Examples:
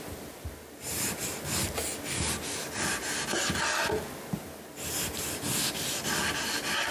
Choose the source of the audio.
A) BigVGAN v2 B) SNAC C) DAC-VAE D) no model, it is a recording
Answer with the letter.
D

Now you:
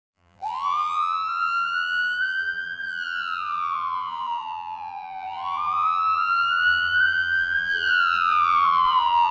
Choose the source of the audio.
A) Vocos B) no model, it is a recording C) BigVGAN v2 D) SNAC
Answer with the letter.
C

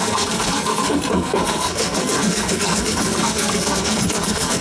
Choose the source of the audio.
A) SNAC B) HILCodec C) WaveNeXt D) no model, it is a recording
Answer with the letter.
A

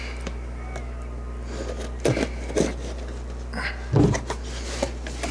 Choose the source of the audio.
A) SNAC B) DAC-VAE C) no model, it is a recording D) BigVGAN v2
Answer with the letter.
C